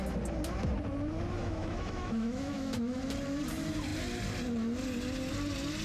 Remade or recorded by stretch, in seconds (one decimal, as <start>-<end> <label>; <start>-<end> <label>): 0.0-1.4 recorded; 1.4-3.0 remade; 3.0-5.8 recorded